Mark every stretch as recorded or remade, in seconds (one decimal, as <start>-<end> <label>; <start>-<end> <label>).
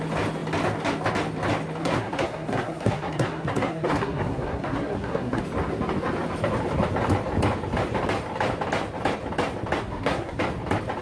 0.0-1.8 recorded; 1.8-5.4 remade; 5.4-9.8 recorded; 9.8-10.4 remade; 10.4-11.0 recorded